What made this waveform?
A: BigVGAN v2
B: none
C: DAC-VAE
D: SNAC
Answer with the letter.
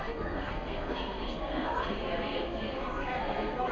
D